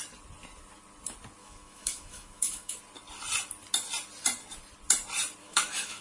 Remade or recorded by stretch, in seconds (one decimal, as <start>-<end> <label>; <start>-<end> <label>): 0.0-1.4 recorded; 1.4-2.8 remade; 2.8-5.4 recorded; 5.4-6.0 remade